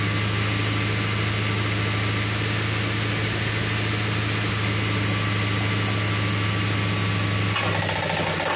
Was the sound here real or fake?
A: real